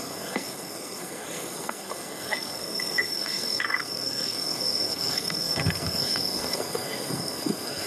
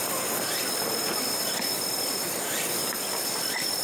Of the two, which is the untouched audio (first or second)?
second